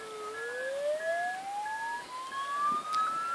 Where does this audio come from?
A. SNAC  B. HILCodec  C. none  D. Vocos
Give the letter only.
C